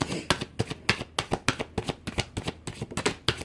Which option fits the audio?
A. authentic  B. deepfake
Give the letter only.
A